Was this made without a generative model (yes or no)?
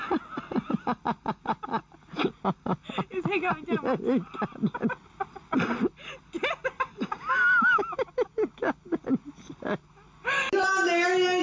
yes